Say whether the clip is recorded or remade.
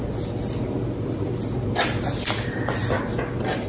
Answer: recorded